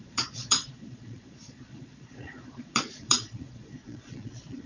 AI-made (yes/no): yes